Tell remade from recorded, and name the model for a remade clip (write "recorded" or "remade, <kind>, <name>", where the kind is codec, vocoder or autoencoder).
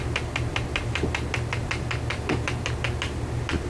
recorded